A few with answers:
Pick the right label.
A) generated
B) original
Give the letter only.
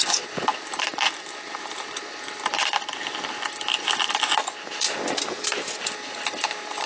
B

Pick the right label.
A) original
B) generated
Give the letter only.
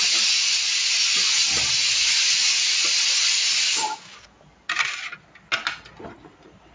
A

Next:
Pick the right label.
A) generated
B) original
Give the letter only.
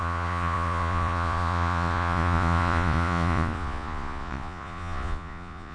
A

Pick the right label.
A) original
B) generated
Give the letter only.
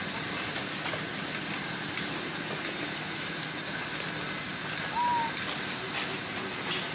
A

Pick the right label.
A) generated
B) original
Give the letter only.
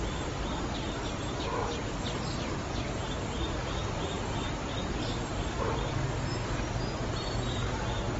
B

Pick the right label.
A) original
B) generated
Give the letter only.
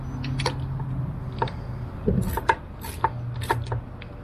A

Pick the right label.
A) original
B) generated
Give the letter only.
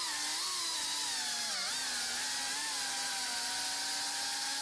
A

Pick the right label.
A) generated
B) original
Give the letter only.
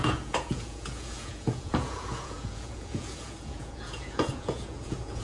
A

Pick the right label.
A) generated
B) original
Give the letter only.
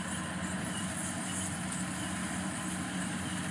B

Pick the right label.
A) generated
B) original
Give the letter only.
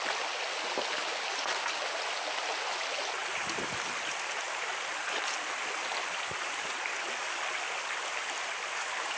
B